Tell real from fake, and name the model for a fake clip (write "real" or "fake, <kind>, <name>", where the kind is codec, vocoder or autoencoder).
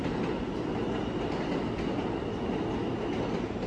real